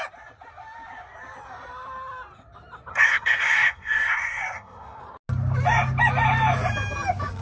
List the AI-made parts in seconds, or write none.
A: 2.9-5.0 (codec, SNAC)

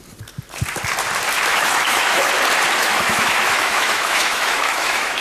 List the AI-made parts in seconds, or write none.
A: 1.5-2.3 (autoencoder, DAC-VAE); 2.8-5.2

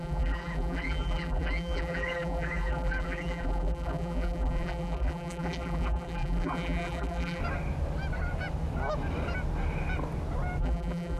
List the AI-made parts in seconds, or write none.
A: 0.0-7.4 (vocoder, BigVGAN v2); 10.6-11.2

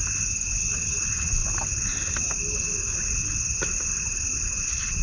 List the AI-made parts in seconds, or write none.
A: none

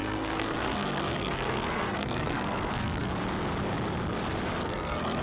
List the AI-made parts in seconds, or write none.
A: 0.0-3.1 (codec, SNAC); 4.6-5.2